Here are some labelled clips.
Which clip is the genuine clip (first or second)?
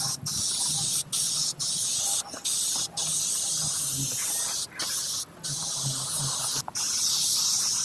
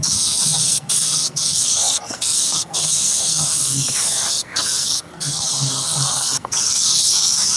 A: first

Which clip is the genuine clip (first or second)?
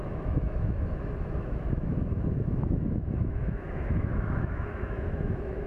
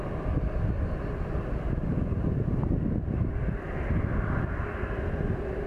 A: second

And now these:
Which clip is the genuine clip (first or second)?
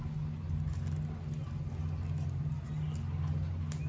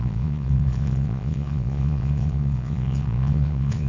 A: first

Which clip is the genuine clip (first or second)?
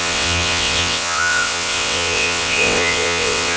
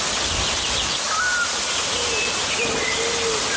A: second